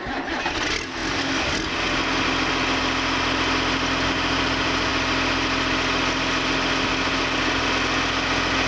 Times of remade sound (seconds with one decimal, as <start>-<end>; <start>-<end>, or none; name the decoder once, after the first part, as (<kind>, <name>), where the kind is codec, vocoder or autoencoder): none